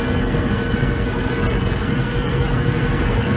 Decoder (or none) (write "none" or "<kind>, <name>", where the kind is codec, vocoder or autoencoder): codec, SNAC